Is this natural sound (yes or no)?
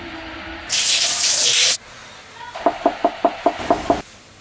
yes